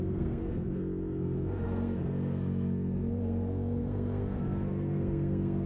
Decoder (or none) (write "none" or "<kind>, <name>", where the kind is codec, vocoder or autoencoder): codec, SNAC